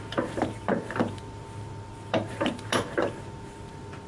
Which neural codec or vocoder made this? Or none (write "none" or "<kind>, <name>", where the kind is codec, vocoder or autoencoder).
vocoder, BigVGAN v2